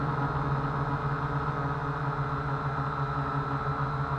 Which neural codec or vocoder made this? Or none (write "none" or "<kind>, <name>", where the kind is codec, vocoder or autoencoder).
none